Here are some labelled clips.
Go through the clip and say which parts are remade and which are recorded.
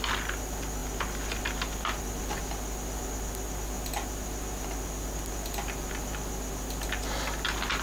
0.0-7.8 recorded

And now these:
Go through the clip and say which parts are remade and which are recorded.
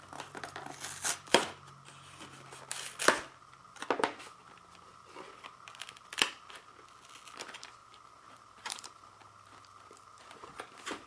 0.0-7.8 recorded; 7.8-11.1 remade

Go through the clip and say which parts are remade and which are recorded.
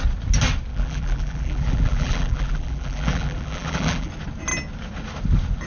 0.0-0.7 recorded; 0.7-4.1 remade; 4.1-5.7 recorded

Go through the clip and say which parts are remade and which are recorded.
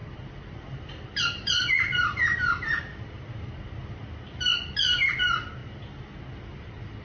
0.0-3.5 remade; 3.5-4.5 recorded; 4.5-5.1 remade; 5.1-5.6 recorded; 5.6-6.2 remade; 6.2-7.0 recorded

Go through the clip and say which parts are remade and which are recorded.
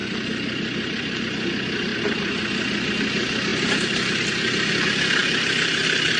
0.0-1.2 remade; 1.2-1.9 recorded; 1.9-2.9 remade; 2.9-3.5 recorded; 3.5-4.3 remade; 4.3-5.2 recorded; 5.2-6.2 remade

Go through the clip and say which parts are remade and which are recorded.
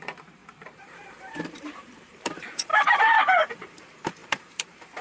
0.0-2.7 remade; 2.7-3.5 recorded; 3.5-5.0 remade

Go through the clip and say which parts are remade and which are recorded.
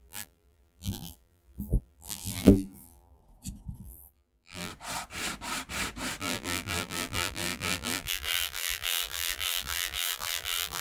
0.0-3.2 remade; 3.2-3.8 recorded; 3.8-4.7 remade; 4.7-6.2 recorded; 6.2-10.8 remade